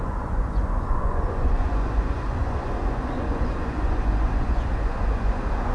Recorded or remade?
remade